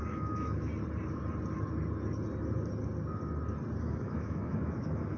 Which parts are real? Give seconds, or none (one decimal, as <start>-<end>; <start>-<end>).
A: 0.7-3.8